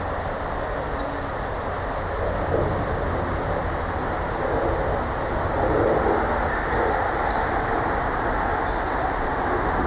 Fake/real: real